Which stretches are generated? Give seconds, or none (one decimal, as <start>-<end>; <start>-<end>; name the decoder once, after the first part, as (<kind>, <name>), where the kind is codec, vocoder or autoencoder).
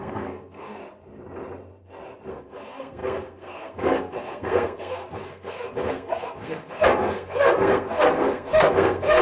0.0-0.8 (codec, SNAC); 2.3-9.2